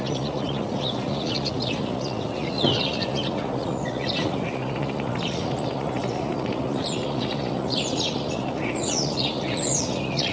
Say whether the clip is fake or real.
fake